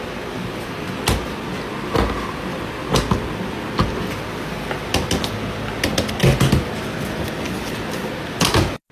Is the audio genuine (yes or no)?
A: yes